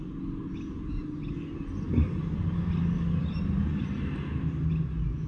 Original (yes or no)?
yes